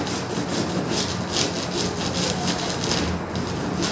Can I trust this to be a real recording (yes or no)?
yes